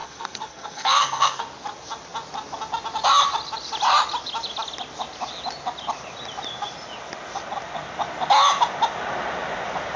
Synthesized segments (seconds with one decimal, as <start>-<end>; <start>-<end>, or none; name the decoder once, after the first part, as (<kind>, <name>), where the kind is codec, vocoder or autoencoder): 0.0-1.4 (codec, SNAC)